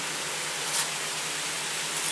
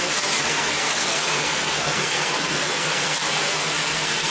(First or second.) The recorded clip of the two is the first